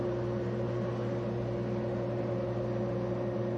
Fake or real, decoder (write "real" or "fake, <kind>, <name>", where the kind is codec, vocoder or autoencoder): real